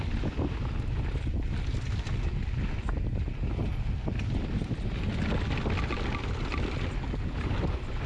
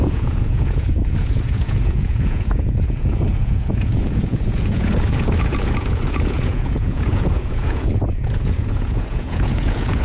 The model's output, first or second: second